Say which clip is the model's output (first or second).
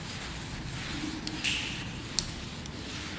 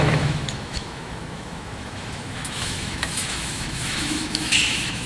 second